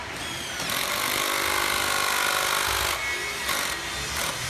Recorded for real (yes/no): yes